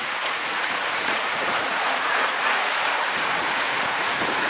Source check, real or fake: fake